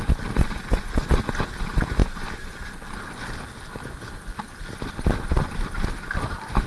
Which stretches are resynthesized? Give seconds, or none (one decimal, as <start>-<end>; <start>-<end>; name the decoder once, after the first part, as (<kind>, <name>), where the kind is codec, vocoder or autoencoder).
none